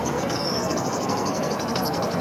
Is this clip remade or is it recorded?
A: remade